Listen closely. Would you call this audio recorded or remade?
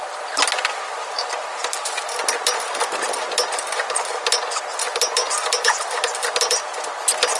recorded